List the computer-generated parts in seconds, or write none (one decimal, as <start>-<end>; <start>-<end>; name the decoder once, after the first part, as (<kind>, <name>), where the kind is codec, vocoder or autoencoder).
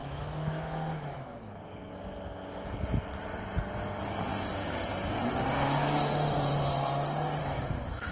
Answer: 0.0-1.9 (autoencoder, DAC-VAE); 7.4-8.1